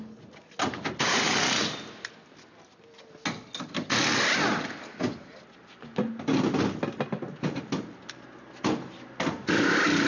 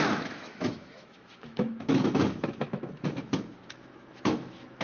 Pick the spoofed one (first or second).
second